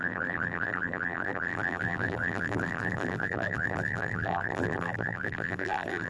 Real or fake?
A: fake